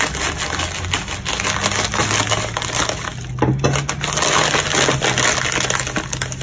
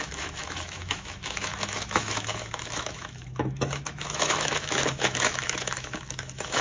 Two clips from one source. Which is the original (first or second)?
first